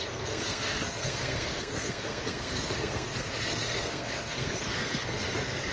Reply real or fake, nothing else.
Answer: fake